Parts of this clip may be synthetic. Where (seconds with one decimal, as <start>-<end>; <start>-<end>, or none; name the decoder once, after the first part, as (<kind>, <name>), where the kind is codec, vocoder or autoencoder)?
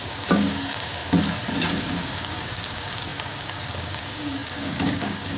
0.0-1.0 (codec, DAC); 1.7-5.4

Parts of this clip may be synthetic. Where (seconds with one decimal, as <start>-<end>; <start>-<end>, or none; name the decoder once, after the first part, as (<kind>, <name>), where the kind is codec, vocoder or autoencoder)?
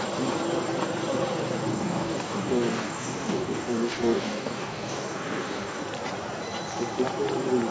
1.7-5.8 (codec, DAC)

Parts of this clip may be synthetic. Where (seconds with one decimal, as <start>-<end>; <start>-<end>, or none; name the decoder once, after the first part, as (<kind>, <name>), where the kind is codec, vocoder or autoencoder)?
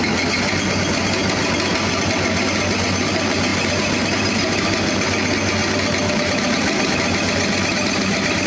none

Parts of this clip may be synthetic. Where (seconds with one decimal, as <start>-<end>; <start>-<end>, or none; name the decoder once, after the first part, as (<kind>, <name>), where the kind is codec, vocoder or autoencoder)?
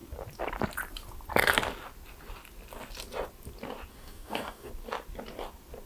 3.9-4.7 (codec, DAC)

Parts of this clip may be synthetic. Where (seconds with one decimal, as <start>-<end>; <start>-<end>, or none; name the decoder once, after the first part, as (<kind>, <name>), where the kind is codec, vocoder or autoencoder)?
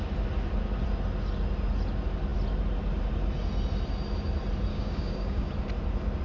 4.7-5.5 (codec, DAC)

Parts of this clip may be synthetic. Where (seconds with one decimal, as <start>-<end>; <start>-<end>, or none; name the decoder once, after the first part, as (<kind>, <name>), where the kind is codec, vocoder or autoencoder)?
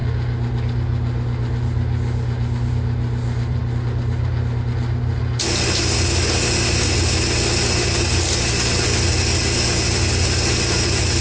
none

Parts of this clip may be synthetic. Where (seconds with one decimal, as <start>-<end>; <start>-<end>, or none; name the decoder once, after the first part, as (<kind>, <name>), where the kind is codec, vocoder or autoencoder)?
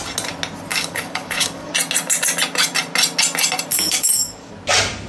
0.7-1.7 (codec, DAC); 3.7-4.5